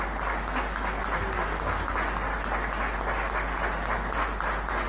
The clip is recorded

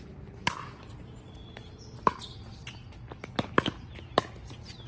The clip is recorded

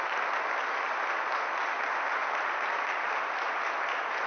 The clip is recorded